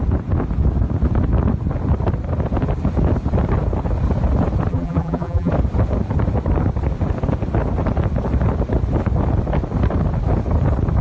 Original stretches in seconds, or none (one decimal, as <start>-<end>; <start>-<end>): 0.0-4.7; 5.5-11.0